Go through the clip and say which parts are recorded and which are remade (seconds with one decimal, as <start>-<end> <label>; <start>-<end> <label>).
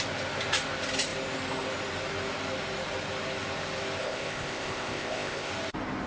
0.0-4.0 recorded; 4.0-5.5 remade; 5.5-6.1 recorded